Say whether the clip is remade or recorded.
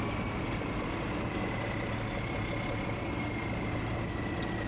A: recorded